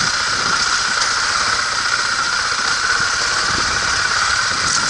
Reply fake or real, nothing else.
real